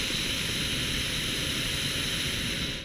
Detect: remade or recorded remade